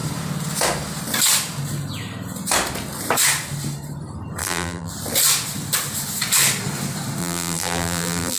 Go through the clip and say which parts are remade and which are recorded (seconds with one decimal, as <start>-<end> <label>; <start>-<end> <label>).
0.0-4.4 recorded; 4.4-4.9 remade; 4.9-7.2 recorded; 7.2-8.4 remade